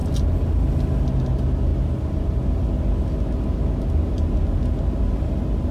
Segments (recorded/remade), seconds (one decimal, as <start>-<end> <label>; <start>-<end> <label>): 0.0-5.7 recorded